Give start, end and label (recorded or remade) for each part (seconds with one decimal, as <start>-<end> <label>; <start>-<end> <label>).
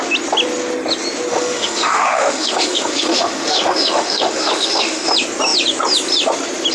0.0-1.3 recorded; 1.3-5.1 remade; 5.1-6.7 recorded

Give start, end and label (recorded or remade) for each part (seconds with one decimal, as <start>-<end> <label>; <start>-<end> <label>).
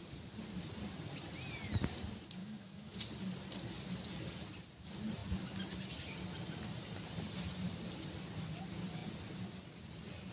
0.0-2.4 recorded; 2.4-3.0 remade; 3.0-10.3 recorded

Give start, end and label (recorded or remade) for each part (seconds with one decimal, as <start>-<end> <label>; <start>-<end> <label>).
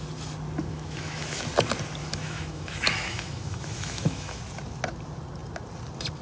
0.0-0.7 recorded; 0.7-1.4 remade; 1.4-2.0 recorded; 2.0-4.4 remade; 4.4-6.2 recorded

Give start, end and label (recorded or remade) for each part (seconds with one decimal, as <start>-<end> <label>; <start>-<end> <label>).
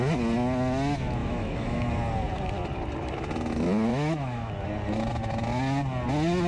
0.0-1.2 recorded; 1.2-1.9 remade; 1.9-3.9 recorded; 3.9-4.5 remade; 4.5-6.5 recorded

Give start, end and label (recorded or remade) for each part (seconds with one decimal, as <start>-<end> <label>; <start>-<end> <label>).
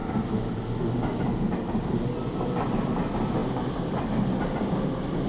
0.0-5.3 recorded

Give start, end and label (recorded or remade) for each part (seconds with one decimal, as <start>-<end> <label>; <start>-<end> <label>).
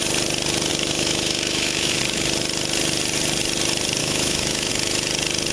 0.0-0.7 recorded; 0.7-2.0 remade; 2.0-4.0 recorded; 4.0-4.7 remade; 4.7-5.5 recorded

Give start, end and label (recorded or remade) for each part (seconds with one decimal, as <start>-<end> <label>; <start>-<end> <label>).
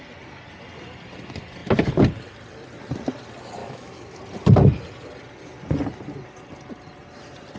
0.0-3.6 recorded; 3.6-4.2 remade; 4.2-7.6 recorded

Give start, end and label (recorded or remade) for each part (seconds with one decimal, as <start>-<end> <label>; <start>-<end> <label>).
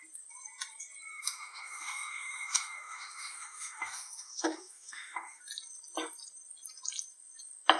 0.0-1.1 recorded; 1.1-5.4 remade; 5.4-7.8 recorded